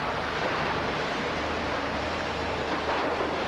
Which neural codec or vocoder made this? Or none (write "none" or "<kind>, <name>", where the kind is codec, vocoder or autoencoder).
vocoder, BigVGAN v2